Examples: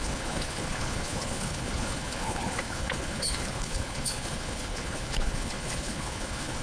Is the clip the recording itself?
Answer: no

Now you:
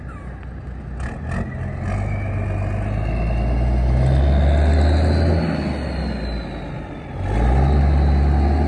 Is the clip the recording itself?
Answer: yes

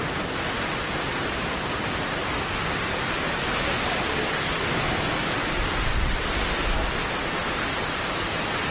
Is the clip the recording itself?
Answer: yes